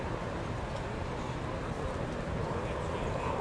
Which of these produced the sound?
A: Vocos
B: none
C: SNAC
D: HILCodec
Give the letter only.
B